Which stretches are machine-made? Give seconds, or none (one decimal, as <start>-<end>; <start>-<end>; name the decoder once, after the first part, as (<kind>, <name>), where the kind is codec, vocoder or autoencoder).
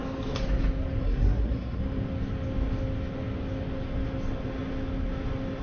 1.0-1.8 (codec, SNAC)